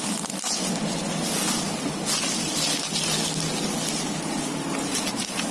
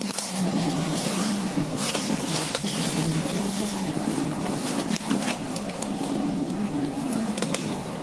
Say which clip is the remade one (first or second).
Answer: second